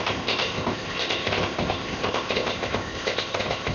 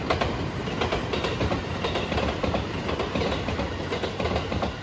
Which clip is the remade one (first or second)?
first